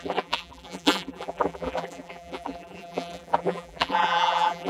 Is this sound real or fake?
fake